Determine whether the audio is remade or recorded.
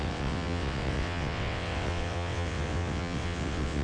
remade